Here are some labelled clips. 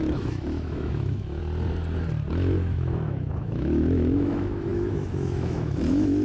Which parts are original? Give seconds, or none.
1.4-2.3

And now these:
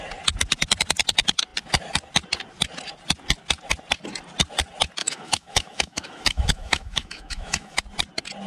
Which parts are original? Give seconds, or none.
0.0-5.0; 7.8-8.5

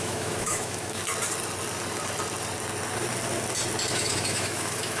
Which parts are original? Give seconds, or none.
1.0-3.9

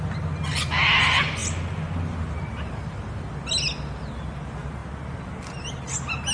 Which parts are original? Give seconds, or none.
0.0-6.3

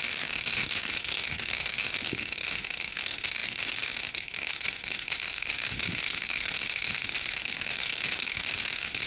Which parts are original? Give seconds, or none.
none

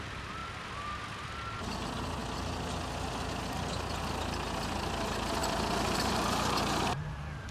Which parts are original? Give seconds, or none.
0.0-7.5

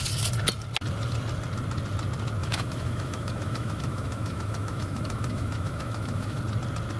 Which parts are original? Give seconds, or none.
0.0-2.4; 6.4-7.0